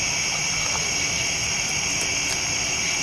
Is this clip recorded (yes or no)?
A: yes